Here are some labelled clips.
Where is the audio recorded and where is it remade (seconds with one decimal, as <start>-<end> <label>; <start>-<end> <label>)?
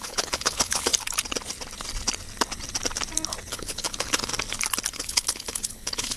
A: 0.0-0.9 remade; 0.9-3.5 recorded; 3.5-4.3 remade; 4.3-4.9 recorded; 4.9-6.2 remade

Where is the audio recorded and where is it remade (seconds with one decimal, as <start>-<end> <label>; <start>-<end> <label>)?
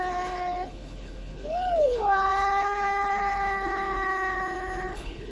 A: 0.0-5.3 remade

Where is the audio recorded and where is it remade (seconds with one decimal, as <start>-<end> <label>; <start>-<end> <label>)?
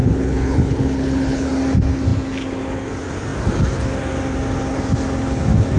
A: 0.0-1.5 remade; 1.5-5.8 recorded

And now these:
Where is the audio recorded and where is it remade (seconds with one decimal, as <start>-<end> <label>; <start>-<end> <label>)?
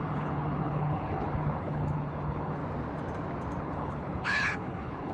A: 0.0-2.6 remade; 2.6-3.6 recorded; 3.6-5.1 remade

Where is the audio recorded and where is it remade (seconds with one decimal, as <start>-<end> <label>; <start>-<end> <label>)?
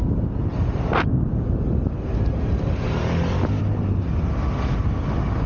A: 0.0-5.5 recorded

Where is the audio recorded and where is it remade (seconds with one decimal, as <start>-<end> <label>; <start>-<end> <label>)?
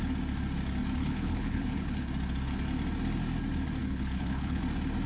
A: 0.0-1.0 recorded; 1.0-2.1 remade; 2.1-3.8 recorded; 3.8-4.6 remade; 4.6-5.1 recorded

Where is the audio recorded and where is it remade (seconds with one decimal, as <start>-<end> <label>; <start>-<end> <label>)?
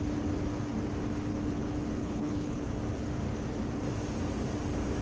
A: 0.0-2.0 recorded; 2.0-2.7 remade; 2.7-5.0 recorded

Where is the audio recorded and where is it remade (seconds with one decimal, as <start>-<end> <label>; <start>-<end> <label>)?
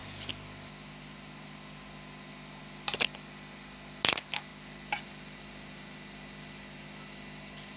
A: 0.0-7.8 recorded